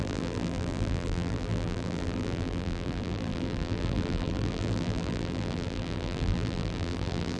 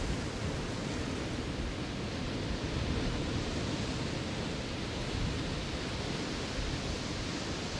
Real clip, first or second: second